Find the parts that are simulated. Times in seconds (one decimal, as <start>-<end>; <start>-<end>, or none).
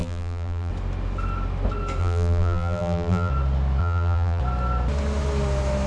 0.0-0.7; 2.0-3.3; 3.8-4.4